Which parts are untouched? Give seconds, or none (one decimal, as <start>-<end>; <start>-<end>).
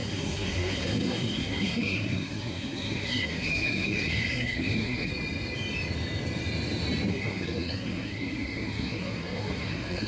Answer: 5.1-7.1